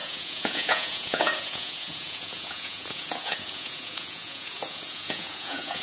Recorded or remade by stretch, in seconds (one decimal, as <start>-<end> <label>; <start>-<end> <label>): 0.0-5.8 remade